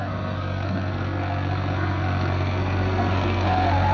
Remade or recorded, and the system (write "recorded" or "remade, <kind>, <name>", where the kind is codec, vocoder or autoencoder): remade, codec, SNAC